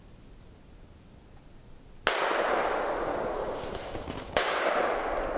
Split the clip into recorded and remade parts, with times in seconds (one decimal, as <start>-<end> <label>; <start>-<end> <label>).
0.0-3.4 recorded; 3.4-4.6 remade; 4.6-5.4 recorded